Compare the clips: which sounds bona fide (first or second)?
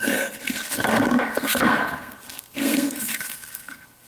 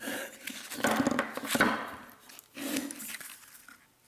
second